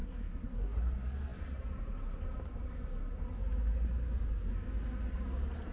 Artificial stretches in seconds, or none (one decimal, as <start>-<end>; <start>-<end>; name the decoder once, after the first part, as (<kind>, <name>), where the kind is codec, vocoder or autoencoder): 0.0-0.9 (codec, SNAC)